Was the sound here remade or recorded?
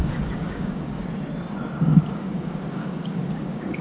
remade